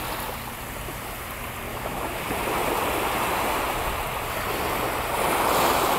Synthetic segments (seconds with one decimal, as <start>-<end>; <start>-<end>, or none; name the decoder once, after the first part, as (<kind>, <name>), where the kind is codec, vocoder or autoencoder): 1.7-2.2 (autoencoder, DAC-VAE)